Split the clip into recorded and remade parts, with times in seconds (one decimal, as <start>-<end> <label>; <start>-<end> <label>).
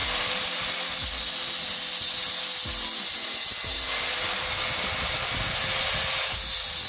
0.0-6.9 recorded